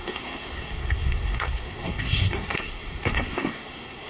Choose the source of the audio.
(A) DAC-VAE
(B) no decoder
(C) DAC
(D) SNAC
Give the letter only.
D